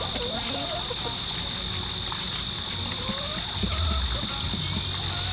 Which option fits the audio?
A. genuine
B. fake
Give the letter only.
A